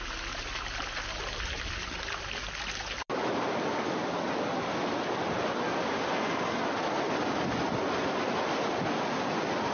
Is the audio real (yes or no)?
yes